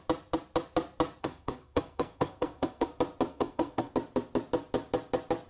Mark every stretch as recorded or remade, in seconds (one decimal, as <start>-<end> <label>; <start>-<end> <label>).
0.0-1.2 recorded; 1.2-2.9 remade; 2.9-3.3 recorded; 3.3-3.9 remade; 3.9-5.5 recorded